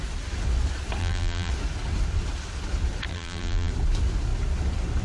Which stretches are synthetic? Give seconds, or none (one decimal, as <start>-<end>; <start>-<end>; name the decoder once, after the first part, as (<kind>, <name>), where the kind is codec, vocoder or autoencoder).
1.0-1.5 (vocoder, BigVGAN v2); 3.1-3.7